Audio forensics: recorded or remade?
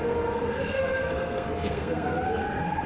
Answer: remade